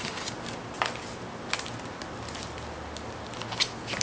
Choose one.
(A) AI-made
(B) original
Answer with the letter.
B